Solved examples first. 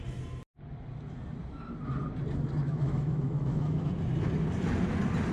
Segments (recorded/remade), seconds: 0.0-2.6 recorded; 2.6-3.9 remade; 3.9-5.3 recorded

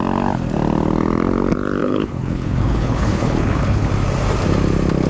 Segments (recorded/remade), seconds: 0.0-1.8 recorded; 1.8-3.9 remade; 3.9-5.1 recorded

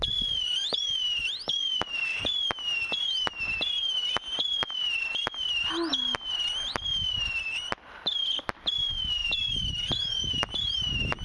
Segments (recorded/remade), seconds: 0.0-11.2 recorded

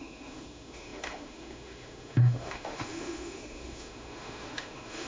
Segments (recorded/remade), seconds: 0.0-5.1 remade

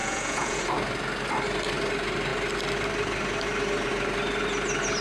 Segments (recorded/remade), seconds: 0.0-0.6 remade; 0.6-5.0 recorded

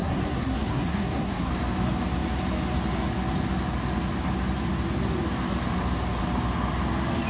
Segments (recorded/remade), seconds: 0.0-1.5 remade; 1.5-7.3 recorded